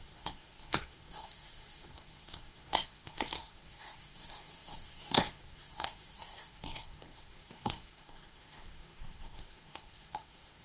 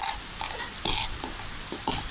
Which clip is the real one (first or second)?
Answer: second